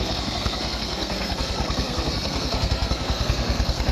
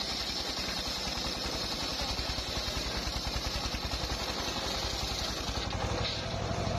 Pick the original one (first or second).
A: second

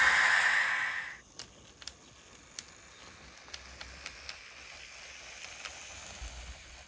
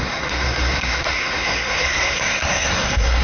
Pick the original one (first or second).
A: first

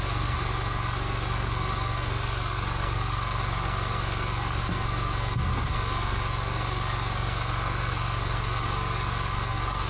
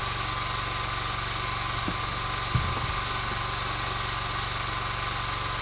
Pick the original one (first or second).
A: second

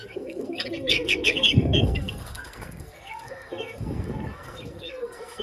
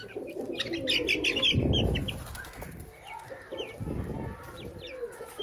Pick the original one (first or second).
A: second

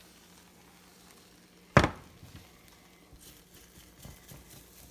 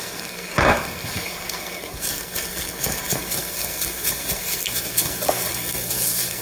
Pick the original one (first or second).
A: first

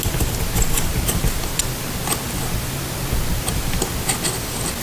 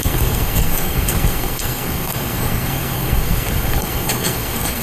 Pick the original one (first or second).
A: first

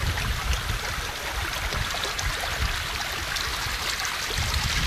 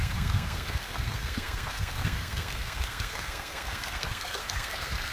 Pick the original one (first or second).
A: first